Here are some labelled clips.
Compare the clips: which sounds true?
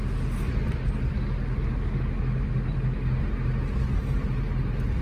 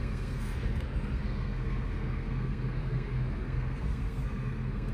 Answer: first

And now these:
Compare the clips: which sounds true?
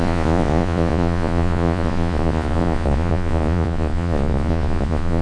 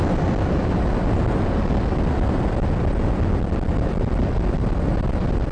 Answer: second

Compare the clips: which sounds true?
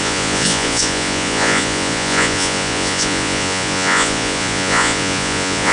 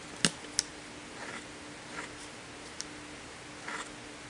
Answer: second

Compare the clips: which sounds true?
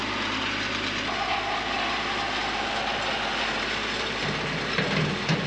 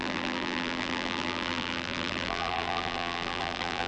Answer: first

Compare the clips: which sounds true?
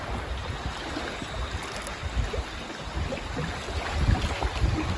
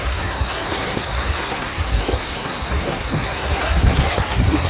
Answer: first